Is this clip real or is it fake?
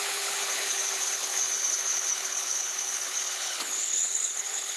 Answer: fake